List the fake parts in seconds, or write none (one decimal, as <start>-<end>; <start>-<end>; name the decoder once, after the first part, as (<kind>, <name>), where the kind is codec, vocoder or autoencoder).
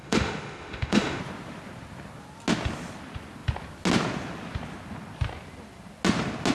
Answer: 0.0-1.2 (autoencoder, DAC-VAE)